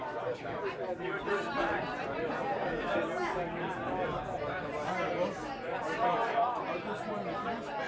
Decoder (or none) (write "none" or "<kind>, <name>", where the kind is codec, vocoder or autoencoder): none